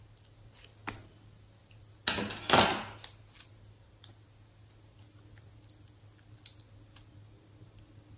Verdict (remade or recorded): recorded